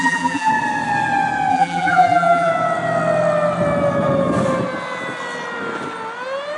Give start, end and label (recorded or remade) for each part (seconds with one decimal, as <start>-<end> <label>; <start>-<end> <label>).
0.0-0.5 remade; 0.5-1.5 recorded; 1.5-2.5 remade; 2.5-6.6 recorded

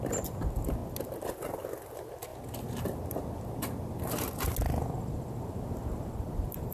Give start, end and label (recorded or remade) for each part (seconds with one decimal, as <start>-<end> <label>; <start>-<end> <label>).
0.0-0.8 remade; 0.8-1.9 recorded; 1.9-2.3 remade; 2.3-6.1 recorded; 6.1-6.7 remade

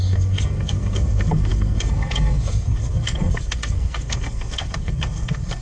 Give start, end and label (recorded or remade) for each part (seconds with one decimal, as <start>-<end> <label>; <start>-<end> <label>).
0.0-5.6 remade

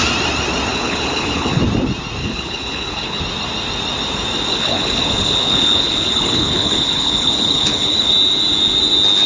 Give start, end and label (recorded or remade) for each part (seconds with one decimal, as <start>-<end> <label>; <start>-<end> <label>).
0.0-0.7 recorded; 0.7-1.6 remade; 1.6-2.2 recorded; 2.2-3.2 remade; 3.2-4.5 recorded; 4.5-8.1 remade; 8.1-9.3 recorded

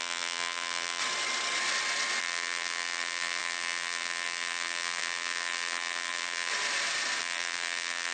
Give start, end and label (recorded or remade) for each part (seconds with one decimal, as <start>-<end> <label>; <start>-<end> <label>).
0.0-1.0 remade; 1.0-2.2 recorded; 2.2-6.5 remade; 6.5-7.2 recorded; 7.2-8.1 remade

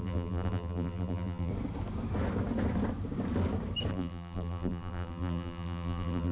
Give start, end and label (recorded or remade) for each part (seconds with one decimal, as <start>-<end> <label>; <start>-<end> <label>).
0.0-1.5 remade; 1.5-3.9 recorded; 3.9-6.3 remade